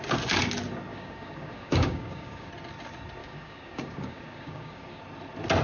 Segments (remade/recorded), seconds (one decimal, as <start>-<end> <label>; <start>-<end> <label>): 0.0-0.9 recorded; 0.9-2.5 remade; 2.5-3.2 recorded; 3.2-5.0 remade; 5.0-5.6 recorded